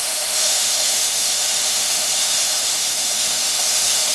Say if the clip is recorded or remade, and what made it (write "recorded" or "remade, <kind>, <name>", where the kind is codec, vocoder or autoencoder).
remade, autoencoder, DAC-VAE